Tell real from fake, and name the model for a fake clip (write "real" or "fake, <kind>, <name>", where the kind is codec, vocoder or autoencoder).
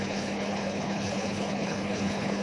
fake, codec, HILCodec